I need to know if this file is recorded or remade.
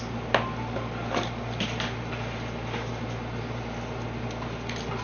recorded